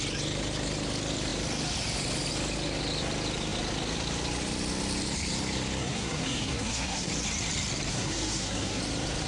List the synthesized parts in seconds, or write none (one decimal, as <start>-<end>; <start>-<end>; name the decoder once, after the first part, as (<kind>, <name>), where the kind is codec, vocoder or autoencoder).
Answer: 5.8-7.1 (codec, SNAC); 7.9-8.8